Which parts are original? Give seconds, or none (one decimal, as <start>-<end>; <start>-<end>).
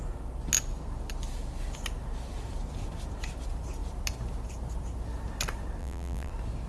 0.0-5.8; 6.3-6.7